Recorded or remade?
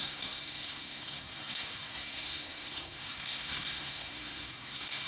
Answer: remade